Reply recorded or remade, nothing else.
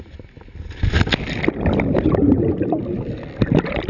recorded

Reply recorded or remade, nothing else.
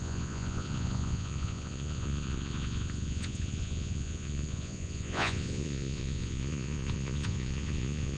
remade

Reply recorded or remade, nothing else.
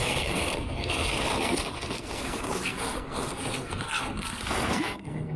remade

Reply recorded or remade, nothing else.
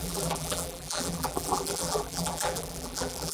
remade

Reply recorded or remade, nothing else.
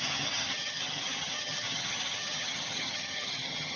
remade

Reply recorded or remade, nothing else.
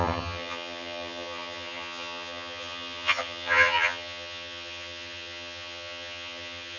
remade